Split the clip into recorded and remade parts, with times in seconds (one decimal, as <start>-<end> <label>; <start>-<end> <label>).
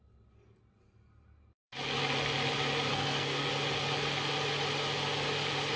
0.0-2.9 recorded; 2.9-3.5 remade; 3.5-5.8 recorded